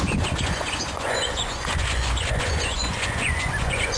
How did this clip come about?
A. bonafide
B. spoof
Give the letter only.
B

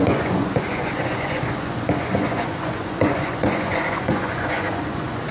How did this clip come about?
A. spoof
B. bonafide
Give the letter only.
A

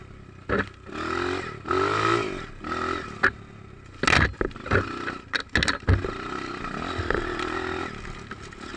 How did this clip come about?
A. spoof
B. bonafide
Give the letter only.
B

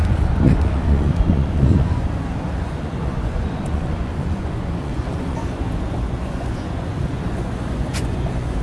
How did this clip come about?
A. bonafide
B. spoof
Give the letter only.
B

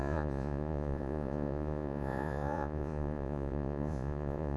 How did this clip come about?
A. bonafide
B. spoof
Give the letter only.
B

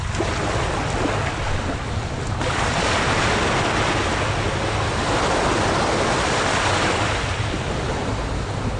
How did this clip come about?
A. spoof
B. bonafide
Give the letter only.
B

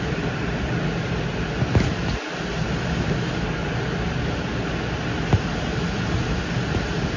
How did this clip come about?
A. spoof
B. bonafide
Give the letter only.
B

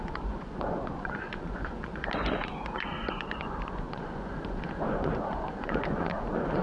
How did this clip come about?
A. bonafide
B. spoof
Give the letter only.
B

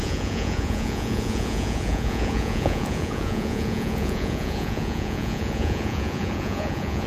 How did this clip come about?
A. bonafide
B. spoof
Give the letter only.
B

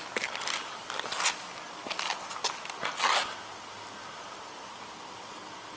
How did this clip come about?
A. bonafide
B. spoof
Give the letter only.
A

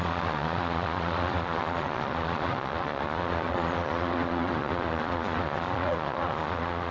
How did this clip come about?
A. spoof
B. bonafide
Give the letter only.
A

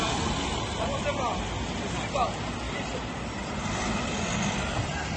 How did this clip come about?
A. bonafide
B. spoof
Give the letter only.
A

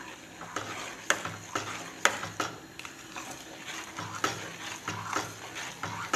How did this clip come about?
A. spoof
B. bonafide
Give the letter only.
B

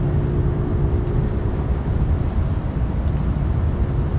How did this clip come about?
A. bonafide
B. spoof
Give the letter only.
A